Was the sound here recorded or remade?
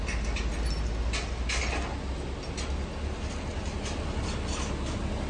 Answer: recorded